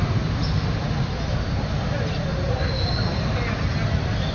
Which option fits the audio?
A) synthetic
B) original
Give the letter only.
B